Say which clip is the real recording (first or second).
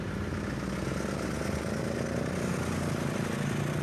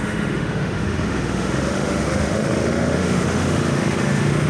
first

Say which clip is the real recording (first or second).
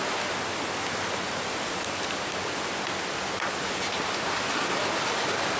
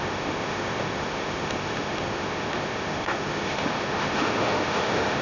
first